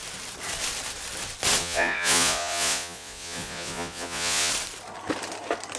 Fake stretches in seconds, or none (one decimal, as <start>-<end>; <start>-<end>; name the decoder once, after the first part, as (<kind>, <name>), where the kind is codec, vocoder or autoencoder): 1.6-4.5 (vocoder, Vocos)